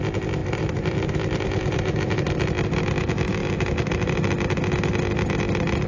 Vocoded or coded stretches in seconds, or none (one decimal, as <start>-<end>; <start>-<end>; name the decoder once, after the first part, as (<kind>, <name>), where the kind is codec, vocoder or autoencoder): 0.4-2.3 (vocoder, BigVGAN v2); 3.4-4.3